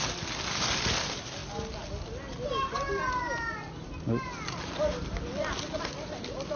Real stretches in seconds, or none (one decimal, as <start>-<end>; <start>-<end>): 0.0-6.6